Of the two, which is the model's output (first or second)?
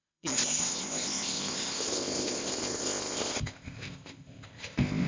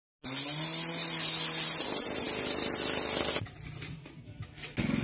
first